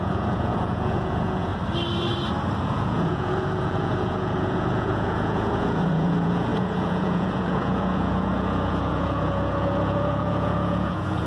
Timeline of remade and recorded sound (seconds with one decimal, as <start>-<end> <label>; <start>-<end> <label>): 0.0-1.5 remade; 1.5-2.6 recorded; 2.6-11.3 remade